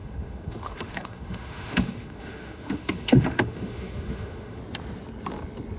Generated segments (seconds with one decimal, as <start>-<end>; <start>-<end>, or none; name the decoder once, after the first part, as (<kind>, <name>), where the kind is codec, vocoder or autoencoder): 0.0-4.6 (autoencoder, DAC-VAE)